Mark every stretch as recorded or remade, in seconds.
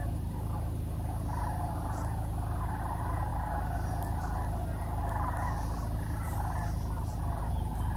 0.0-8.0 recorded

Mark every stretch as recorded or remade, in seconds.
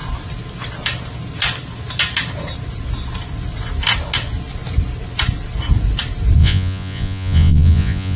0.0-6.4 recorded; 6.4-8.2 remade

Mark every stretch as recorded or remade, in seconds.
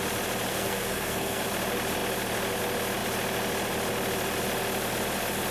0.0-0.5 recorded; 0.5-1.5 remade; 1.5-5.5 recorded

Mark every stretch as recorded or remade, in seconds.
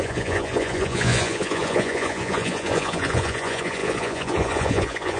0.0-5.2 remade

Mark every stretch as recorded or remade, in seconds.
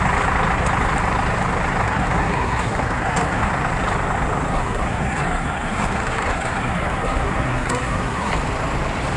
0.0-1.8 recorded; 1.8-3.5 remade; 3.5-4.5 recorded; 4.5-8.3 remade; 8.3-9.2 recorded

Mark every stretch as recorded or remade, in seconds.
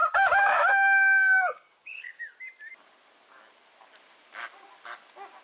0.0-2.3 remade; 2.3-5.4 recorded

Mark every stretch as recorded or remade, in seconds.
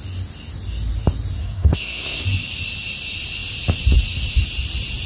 0.0-1.4 recorded; 1.4-2.2 remade; 2.2-5.1 recorded